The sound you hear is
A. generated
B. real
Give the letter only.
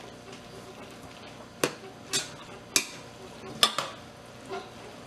B